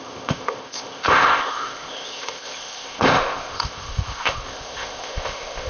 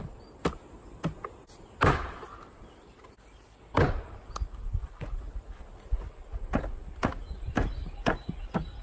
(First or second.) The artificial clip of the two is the first